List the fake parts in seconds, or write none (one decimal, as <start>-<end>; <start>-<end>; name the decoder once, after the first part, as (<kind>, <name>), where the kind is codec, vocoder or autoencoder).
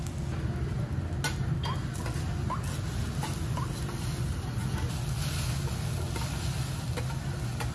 none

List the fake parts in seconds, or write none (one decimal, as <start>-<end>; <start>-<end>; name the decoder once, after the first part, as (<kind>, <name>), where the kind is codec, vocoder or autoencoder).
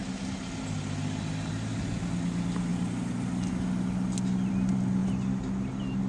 none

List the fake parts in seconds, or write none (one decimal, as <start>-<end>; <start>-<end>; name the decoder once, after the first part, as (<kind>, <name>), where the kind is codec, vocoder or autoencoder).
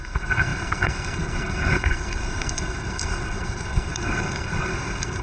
0.0-5.2 (codec, SNAC)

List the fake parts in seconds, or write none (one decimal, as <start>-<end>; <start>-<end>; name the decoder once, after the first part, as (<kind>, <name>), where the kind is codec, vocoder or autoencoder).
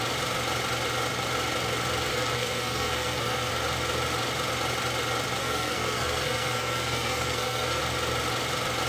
2.1-3.5 (codec, SNAC); 5.4-7.8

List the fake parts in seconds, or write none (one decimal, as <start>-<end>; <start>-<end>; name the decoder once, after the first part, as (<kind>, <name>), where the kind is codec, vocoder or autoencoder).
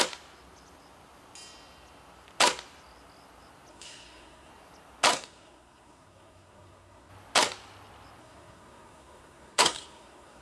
3.7-4.5 (codec, SNAC); 5.1-7.1; 8.2-10.4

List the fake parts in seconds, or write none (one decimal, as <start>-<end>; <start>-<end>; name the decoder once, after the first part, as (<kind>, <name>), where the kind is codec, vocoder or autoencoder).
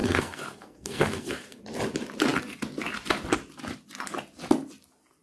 0.0-1.6 (codec, SNAC)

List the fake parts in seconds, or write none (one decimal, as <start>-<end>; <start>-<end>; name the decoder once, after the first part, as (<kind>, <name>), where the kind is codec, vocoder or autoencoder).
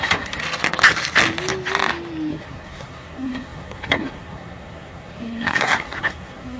0.0-0.4 (codec, SNAC); 2.3-6.6